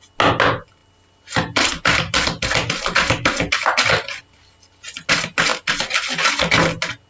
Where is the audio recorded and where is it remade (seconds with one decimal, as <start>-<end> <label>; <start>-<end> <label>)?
0.0-7.1 recorded

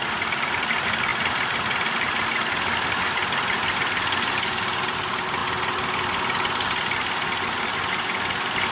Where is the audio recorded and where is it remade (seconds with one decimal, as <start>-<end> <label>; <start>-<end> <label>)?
0.0-8.7 recorded

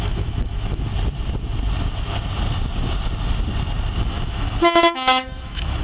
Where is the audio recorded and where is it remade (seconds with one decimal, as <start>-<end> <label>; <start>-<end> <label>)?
0.0-0.9 remade; 0.9-4.0 recorded; 4.0-5.8 remade

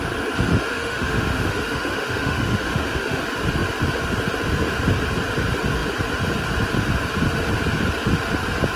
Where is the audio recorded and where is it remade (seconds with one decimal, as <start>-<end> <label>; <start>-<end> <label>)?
0.0-0.5 recorded; 0.5-3.2 remade; 3.2-8.8 recorded

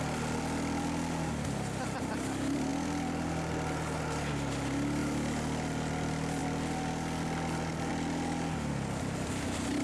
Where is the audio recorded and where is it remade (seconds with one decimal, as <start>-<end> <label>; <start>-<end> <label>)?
0.0-9.8 recorded

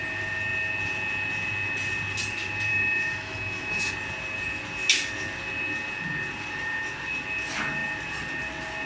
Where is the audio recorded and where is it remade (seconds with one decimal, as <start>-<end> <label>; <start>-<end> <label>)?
0.0-2.7 recorded; 2.7-3.9 remade; 3.9-8.9 recorded

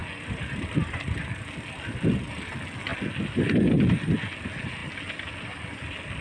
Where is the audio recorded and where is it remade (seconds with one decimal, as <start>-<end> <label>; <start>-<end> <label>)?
0.0-6.2 recorded